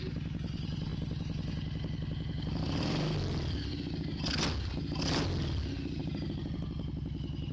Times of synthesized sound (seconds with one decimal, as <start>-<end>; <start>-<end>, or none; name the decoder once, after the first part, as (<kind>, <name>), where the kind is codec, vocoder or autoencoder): none